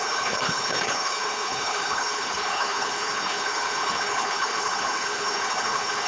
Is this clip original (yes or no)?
no